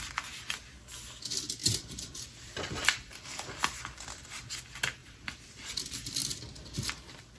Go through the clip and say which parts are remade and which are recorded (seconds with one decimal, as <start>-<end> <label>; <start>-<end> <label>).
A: 0.0-1.6 recorded; 1.6-4.4 remade; 4.4-5.0 recorded; 5.0-5.8 remade; 5.8-6.2 recorded; 6.2-7.4 remade